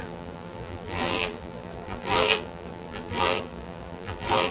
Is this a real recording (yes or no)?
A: no